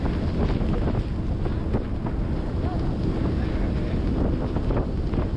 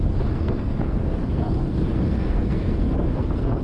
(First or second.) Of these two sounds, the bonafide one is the first